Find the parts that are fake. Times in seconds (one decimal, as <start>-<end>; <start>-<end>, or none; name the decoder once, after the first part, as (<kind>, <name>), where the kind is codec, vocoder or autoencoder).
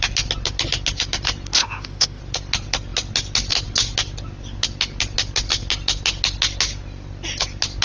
1.6-2.2 (autoencoder, DAC-VAE)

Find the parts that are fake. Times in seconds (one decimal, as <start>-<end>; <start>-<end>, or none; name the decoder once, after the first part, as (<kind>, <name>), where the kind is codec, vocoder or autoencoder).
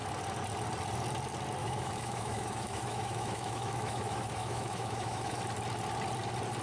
1.6-5.4 (autoencoder, DAC-VAE)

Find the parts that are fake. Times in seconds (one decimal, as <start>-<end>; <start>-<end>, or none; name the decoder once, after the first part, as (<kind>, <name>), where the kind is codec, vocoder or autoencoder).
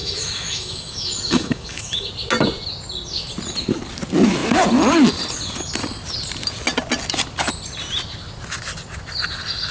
0.0-2.1 (autoencoder, DAC-VAE)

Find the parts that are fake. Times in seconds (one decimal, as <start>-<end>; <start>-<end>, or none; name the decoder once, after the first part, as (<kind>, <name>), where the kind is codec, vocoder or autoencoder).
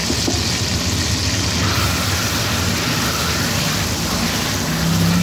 none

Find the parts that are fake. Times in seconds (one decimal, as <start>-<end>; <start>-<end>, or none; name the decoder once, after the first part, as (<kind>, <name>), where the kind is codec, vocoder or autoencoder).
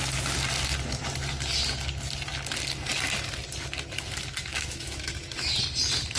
4.5-5.1 (autoencoder, DAC-VAE)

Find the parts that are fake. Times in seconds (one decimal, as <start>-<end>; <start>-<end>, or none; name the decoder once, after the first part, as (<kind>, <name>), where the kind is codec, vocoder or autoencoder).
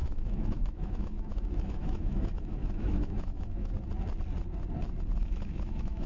0.0-3.7 (autoencoder, DAC-VAE); 5.2-6.1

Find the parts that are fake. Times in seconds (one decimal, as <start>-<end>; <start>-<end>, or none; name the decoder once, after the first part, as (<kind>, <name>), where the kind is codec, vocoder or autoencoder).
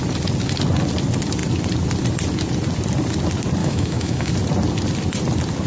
3.6-4.3 (autoencoder, DAC-VAE)